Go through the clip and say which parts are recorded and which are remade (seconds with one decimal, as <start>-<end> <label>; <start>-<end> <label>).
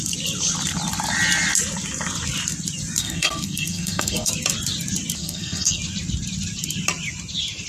0.0-3.0 recorded; 3.0-4.3 remade; 4.3-5.2 recorded; 5.2-5.8 remade; 5.8-7.7 recorded